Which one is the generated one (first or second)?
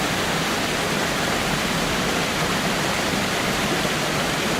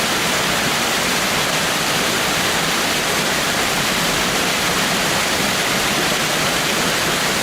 second